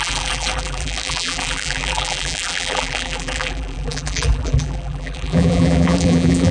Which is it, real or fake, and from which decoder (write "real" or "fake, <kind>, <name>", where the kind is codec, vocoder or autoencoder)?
fake, vocoder, BigVGAN v2